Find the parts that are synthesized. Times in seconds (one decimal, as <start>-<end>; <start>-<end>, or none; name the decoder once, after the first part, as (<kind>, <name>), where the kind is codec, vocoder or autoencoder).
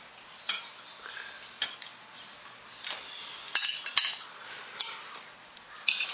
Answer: none